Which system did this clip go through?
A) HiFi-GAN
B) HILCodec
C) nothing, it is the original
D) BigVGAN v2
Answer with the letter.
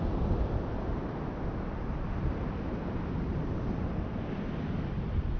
C